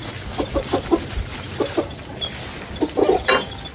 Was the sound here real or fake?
real